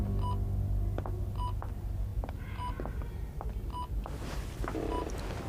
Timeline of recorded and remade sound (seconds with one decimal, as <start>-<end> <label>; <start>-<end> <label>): 0.0-5.5 recorded